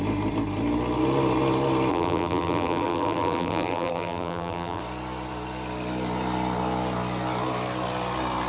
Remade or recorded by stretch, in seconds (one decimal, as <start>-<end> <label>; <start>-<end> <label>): 0.0-1.9 recorded; 1.9-4.8 remade; 4.8-8.5 recorded